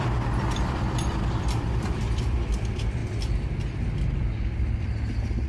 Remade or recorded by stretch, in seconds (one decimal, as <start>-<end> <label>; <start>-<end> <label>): 0.0-3.0 remade; 3.0-5.5 recorded